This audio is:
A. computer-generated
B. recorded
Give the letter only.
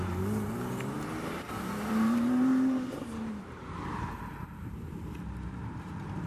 A